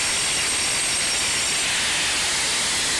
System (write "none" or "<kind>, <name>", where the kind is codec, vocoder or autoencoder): none